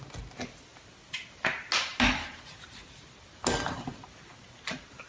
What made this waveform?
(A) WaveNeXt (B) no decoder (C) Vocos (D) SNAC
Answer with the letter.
B